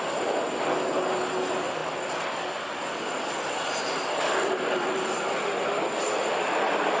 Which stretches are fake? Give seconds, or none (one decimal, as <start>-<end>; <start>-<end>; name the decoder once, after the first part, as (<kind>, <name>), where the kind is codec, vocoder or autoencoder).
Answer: none